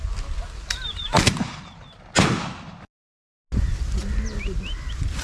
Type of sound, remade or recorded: recorded